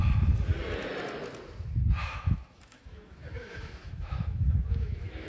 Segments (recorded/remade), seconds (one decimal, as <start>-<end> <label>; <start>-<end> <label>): 0.0-2.0 recorded; 2.0-5.3 remade